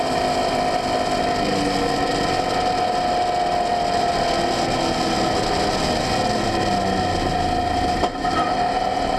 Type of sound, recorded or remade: recorded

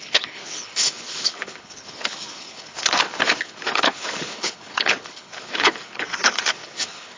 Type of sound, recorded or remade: remade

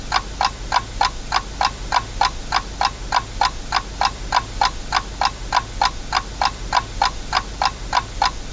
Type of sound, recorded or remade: recorded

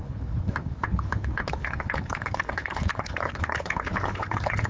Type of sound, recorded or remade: remade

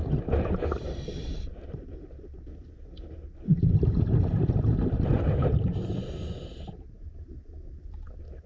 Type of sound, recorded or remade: recorded